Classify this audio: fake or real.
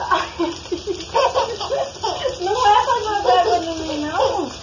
real